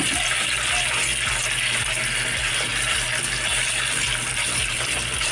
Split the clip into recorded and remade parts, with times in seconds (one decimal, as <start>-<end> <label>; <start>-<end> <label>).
0.0-5.3 recorded